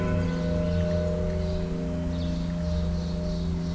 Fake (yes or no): no